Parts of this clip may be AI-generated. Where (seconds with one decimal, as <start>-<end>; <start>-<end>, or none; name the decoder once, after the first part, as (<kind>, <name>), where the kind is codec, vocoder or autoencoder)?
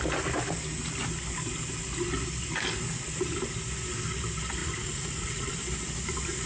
4.6-5.5 (vocoder, Vocos)